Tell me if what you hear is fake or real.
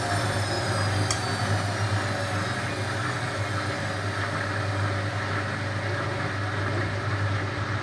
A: real